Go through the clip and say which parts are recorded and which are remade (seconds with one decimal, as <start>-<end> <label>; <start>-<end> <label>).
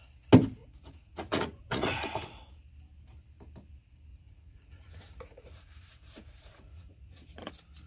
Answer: 0.0-0.6 recorded; 0.6-2.5 remade; 2.5-4.1 recorded; 4.1-7.5 remade; 7.5-7.9 recorded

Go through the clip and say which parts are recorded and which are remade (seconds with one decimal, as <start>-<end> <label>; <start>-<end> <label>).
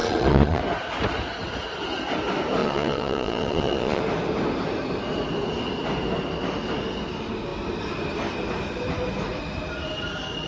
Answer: 0.0-0.6 remade; 0.6-2.6 recorded; 2.6-4.0 remade; 4.0-10.5 recorded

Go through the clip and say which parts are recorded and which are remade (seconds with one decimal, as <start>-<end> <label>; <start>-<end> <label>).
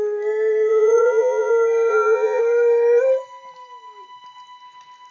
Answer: 0.0-0.7 recorded; 0.7-1.5 remade; 1.5-1.9 recorded; 1.9-2.4 remade; 2.4-5.1 recorded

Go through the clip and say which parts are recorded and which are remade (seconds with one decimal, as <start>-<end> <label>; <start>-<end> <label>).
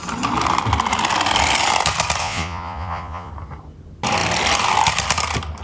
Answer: 0.0-2.2 recorded; 2.2-3.3 remade; 3.3-5.6 recorded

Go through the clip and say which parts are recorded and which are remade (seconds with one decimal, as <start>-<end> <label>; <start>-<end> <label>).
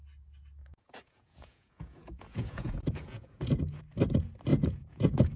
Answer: 0.0-0.6 recorded; 0.6-3.8 remade; 3.8-4.5 recorded; 4.5-5.4 remade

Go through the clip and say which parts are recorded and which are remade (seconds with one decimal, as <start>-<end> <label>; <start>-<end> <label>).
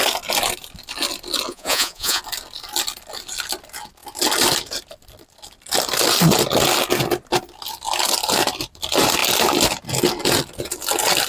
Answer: 0.0-1.5 recorded; 1.5-2.2 remade; 2.2-11.3 recorded